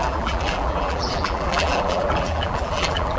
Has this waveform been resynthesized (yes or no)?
yes